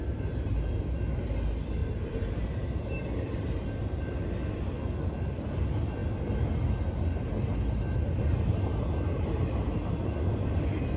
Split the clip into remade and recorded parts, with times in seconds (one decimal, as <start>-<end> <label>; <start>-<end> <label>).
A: 0.0-1.8 recorded; 1.8-3.7 remade; 3.7-11.0 recorded